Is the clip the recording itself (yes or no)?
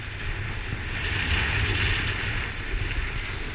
yes